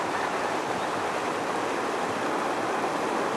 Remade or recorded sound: recorded